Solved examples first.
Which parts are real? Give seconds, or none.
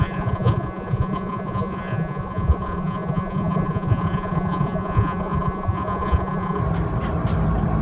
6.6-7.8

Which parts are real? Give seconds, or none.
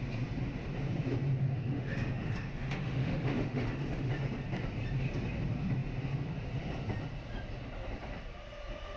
0.0-1.4; 4.1-9.0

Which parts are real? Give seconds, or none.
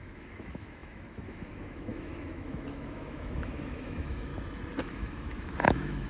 4.3-4.8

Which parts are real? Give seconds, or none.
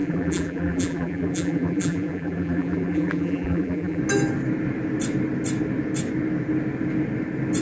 4.0-7.6